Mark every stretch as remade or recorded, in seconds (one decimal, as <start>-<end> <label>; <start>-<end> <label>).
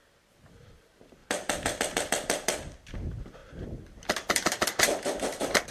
0.0-3.4 recorded; 3.4-5.7 remade